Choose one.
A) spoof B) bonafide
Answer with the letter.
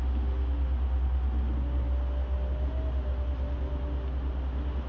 B